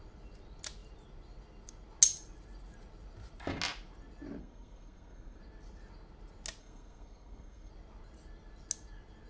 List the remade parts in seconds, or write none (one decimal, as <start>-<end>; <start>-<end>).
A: 4.4-5.4; 6.6-7.7